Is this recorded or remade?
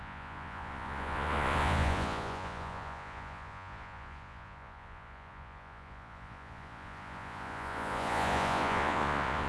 remade